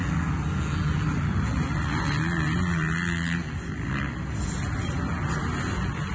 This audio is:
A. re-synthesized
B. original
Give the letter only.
B